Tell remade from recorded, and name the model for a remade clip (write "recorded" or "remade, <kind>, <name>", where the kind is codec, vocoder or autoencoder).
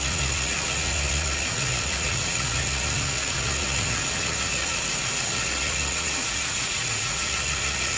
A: remade, vocoder, Vocos